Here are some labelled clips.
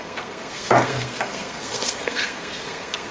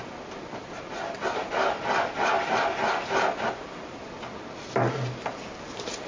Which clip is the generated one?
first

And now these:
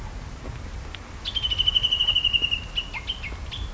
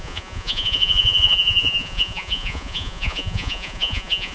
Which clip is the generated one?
second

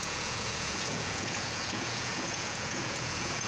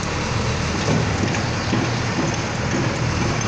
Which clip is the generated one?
first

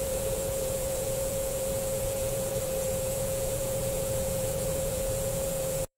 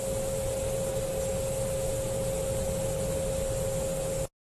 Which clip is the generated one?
first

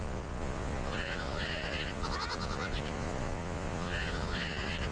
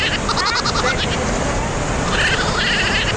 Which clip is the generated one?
first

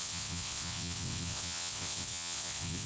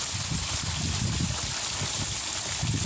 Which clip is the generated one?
first